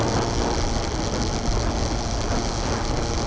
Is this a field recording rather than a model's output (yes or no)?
yes